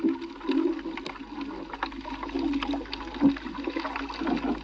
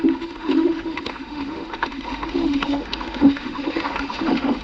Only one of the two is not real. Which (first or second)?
second